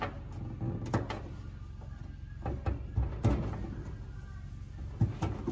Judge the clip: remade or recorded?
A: recorded